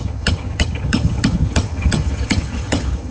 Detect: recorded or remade remade